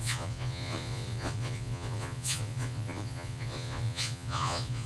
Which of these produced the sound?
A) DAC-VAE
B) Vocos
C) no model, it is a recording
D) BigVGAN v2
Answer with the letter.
B